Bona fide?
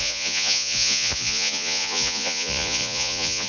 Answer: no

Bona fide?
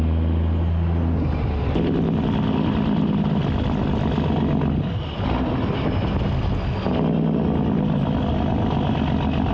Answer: yes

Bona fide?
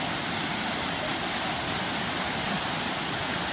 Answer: yes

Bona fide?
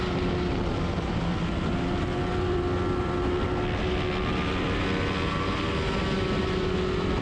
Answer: yes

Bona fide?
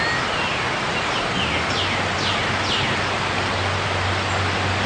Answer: yes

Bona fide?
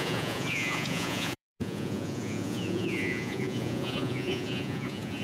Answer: no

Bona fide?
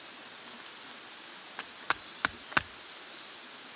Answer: yes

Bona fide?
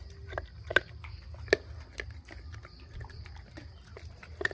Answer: yes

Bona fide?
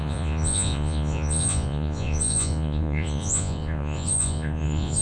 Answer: no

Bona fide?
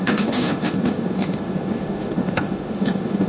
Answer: no